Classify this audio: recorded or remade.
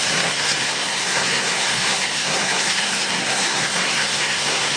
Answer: remade